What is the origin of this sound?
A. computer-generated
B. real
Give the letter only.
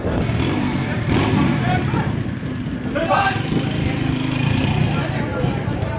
A